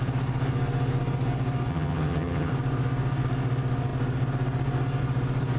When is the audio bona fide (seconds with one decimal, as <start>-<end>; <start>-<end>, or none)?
0.0-1.7; 2.5-5.6